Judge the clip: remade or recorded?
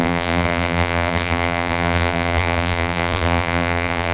remade